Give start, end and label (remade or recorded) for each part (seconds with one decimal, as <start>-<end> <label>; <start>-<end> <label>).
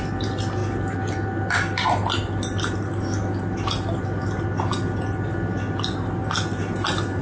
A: 0.0-7.2 recorded